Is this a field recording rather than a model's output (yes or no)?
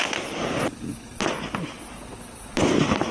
yes